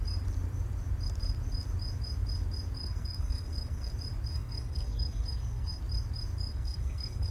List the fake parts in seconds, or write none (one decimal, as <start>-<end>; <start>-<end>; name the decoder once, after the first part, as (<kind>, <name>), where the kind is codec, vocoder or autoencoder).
2.8-3.9 (codec, SNAC); 4.3-5.8; 6.5-7.3